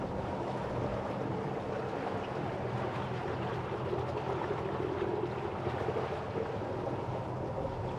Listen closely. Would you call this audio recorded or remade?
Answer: recorded